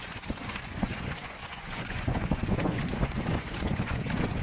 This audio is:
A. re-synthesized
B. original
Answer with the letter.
A